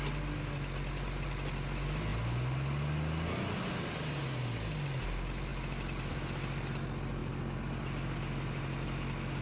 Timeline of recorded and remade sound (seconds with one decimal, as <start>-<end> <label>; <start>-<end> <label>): 0.0-9.4 recorded